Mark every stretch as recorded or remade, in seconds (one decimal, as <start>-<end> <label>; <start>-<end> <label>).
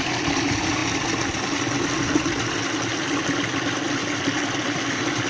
0.0-5.3 recorded